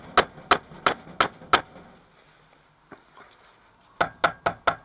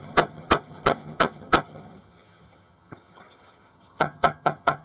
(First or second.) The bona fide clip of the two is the first